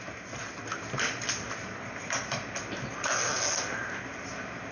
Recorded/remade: recorded